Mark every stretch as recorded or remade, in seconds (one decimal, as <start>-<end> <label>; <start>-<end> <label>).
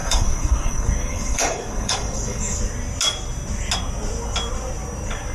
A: 0.0-2.6 remade; 2.6-5.3 recorded